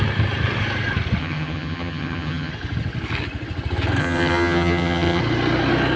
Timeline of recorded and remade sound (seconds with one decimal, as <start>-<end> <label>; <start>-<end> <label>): 0.0-1.2 recorded; 1.2-2.5 remade; 2.5-4.0 recorded; 4.0-5.2 remade; 5.2-6.0 recorded